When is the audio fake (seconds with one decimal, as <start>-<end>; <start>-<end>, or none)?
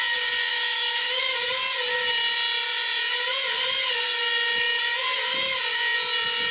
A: 0.5-1.2